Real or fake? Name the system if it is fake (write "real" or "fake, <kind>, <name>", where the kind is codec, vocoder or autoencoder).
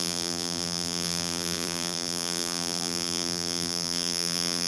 fake, vocoder, BigVGAN v2